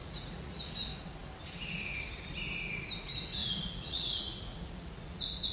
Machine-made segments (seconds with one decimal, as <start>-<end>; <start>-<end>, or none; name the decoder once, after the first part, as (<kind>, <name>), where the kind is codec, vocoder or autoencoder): 0.0-0.7 (vocoder, Vocos); 3.4-5.5